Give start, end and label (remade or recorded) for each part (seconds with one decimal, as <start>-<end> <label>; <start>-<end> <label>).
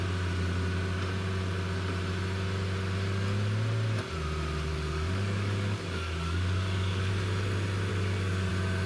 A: 0.0-4.7 recorded; 4.7-7.1 remade; 7.1-7.9 recorded; 7.9-8.5 remade; 8.5-8.9 recorded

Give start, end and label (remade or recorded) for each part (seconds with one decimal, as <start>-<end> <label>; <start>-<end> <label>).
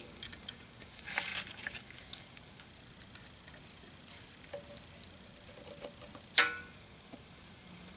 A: 0.0-2.7 remade; 2.7-6.6 recorded; 6.6-8.0 remade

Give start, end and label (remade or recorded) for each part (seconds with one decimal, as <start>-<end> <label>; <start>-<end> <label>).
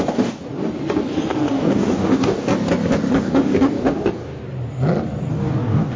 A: 0.0-0.4 remade; 0.4-1.5 recorded; 1.5-2.5 remade; 2.5-3.2 recorded; 3.2-4.4 remade; 4.4-5.3 recorded; 5.3-6.0 remade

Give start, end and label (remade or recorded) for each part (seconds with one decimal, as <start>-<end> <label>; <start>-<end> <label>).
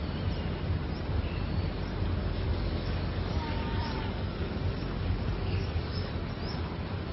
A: 0.0-2.2 recorded; 2.2-6.1 remade; 6.1-7.1 recorded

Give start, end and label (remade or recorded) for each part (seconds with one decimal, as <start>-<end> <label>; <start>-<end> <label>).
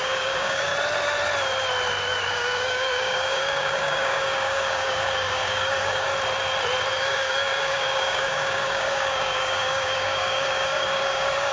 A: 0.0-0.7 remade; 0.7-2.3 recorded; 2.3-6.1 remade; 6.1-6.9 recorded; 6.9-11.5 remade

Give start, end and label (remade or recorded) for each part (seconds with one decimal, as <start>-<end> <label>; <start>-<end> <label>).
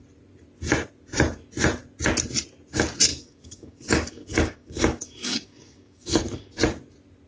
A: 0.0-3.1 recorded; 3.1-6.6 remade; 6.6-7.3 recorded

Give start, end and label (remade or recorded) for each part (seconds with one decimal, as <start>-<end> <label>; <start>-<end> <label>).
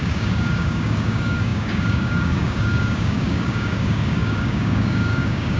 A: 0.0-5.6 remade